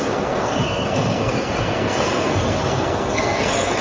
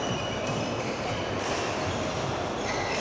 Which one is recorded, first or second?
second